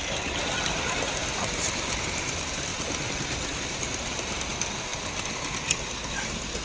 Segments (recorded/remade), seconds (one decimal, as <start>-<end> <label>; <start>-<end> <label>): 0.0-6.6 recorded